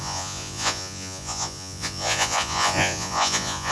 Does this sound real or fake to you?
fake